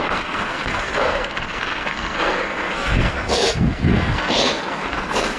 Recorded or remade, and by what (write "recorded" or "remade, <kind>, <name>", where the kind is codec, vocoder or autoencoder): remade, codec, SNAC